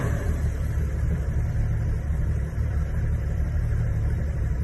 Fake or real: fake